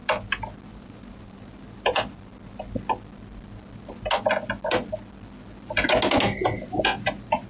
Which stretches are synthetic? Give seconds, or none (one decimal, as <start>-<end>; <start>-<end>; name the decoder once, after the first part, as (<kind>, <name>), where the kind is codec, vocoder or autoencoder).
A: 0.7-2.3 (vocoder, BigVGAN v2); 6.8-7.5